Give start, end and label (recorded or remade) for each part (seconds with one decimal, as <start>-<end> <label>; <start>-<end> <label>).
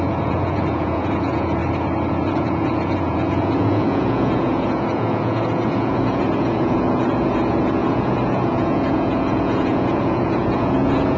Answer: 0.0-1.6 remade; 1.6-2.1 recorded; 2.1-11.2 remade